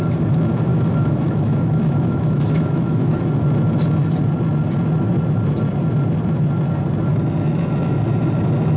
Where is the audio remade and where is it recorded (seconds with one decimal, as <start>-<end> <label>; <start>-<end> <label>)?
0.0-0.7 recorded; 0.7-3.2 remade; 3.2-8.8 recorded